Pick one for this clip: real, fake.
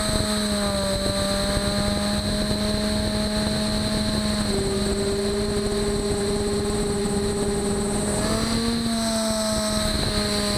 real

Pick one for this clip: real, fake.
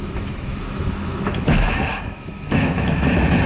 fake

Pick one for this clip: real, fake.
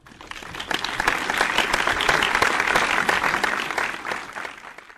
real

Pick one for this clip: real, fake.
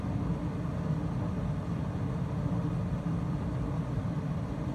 real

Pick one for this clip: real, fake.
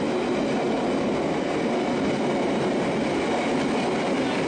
real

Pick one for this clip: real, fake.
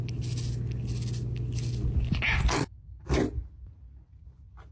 real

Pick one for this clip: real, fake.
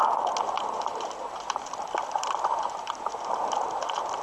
real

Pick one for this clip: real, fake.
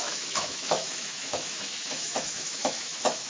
fake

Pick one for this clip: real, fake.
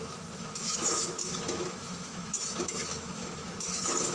fake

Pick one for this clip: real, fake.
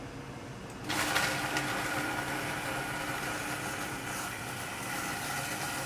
real